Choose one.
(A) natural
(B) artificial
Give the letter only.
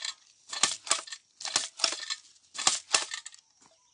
A